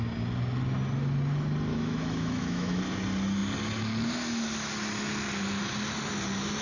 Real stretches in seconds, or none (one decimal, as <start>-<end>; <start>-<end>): 0.0-1.7; 2.8-6.6